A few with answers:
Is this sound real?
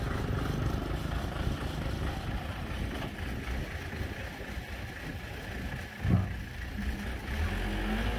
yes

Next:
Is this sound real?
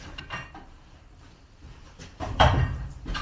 no